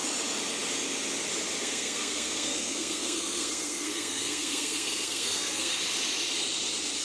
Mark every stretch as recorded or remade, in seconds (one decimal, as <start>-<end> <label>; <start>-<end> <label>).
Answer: 0.0-1.6 recorded; 1.6-5.8 remade; 5.8-7.0 recorded